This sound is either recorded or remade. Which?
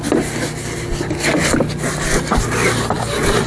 recorded